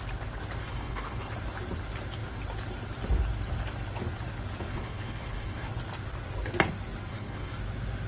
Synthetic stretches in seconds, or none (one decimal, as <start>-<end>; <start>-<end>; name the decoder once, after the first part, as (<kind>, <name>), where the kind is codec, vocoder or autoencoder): 0.6-1.3 (codec, HILCodec); 4.7-5.7; 7.1-7.6